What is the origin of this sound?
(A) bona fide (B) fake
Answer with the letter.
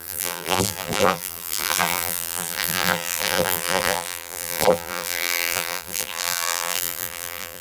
B